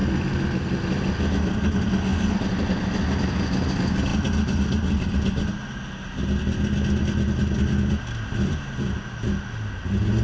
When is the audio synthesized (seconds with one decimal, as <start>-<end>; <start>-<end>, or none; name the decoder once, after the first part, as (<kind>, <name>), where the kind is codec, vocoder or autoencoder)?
none

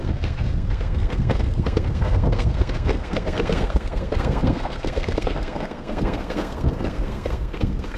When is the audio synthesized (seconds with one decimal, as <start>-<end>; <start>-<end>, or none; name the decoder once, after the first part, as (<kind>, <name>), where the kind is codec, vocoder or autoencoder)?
0.0-8.0 (codec, SNAC)

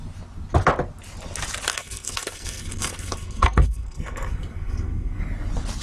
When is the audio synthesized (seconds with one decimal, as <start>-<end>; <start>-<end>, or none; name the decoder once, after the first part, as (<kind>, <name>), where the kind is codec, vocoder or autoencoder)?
1.7-5.2 (codec, SNAC)

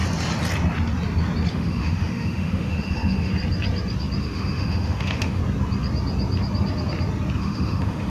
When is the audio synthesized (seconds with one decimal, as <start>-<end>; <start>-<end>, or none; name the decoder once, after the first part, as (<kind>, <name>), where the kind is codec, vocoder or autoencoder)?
1.5-3.3 (autoencoder, DAC-VAE); 4.2-5.4; 7.4-8.1

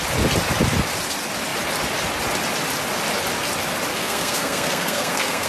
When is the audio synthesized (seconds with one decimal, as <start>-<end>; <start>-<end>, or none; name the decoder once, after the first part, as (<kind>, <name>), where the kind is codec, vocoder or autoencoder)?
3.9-5.5 (codec, SNAC)

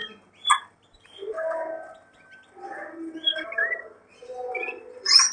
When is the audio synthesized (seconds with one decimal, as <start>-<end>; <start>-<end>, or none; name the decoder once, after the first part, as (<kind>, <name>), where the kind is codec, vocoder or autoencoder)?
0.6-5.3 (vocoder, BigVGAN v2)